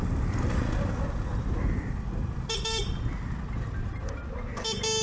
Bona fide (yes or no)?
yes